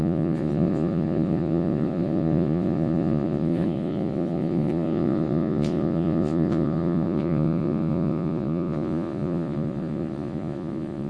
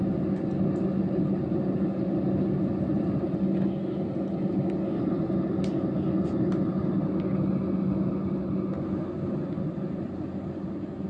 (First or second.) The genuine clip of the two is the second